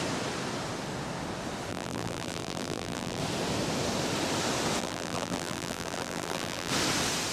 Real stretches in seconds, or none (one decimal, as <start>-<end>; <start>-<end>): 0.0-1.7; 3.2-4.8; 6.7-7.3